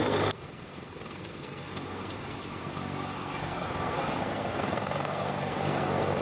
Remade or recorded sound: remade